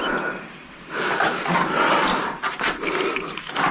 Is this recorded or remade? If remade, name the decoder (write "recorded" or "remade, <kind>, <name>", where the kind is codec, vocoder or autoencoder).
recorded